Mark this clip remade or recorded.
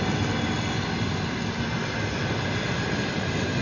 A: recorded